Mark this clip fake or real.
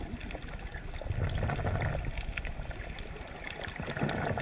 real